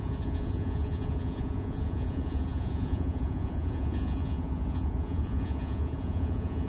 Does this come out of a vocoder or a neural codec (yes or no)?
yes